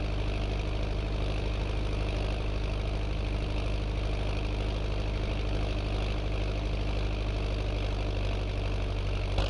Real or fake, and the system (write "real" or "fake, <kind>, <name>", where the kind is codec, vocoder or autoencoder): real